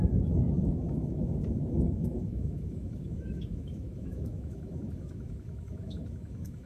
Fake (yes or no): yes